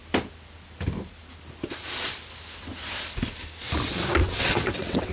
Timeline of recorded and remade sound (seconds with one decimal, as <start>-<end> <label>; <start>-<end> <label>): 0.0-4.2 recorded; 4.2-5.1 remade